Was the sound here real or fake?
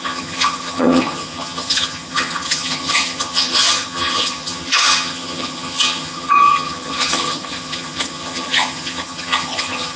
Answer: fake